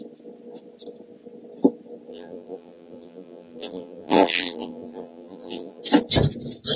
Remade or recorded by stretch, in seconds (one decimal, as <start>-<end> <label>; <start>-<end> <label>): 0.0-2.1 recorded; 2.1-5.8 remade; 5.8-6.8 recorded